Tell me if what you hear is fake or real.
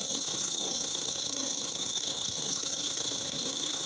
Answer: fake